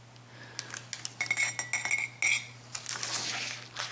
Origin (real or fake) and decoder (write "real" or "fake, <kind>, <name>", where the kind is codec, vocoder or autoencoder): real